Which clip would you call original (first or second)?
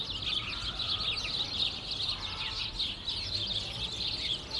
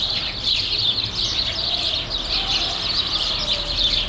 first